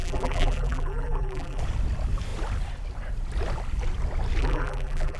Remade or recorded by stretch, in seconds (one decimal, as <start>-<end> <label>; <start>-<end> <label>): 0.0-1.6 remade; 1.6-4.4 recorded; 4.4-5.2 remade